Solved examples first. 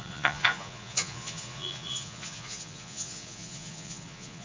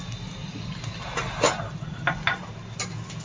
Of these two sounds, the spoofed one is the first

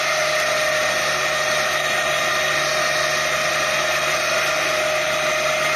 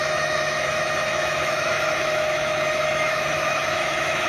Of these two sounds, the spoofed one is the second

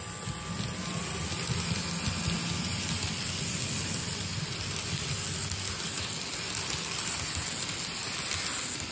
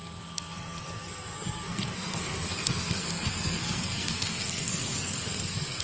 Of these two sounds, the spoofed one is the second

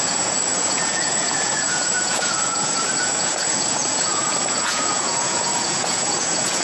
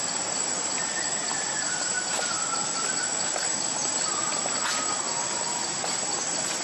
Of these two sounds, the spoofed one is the first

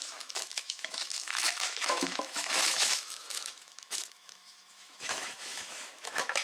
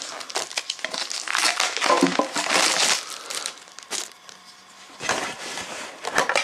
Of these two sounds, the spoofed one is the first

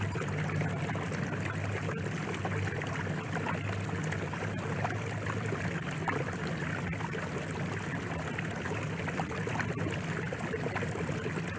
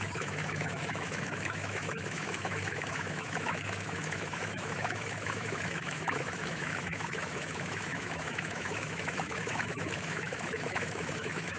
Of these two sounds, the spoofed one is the second